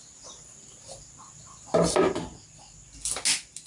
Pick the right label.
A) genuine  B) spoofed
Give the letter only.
A